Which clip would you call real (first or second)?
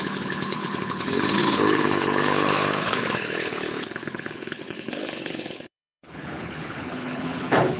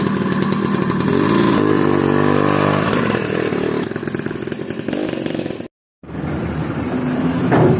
second